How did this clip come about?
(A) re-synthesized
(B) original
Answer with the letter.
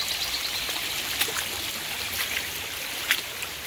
B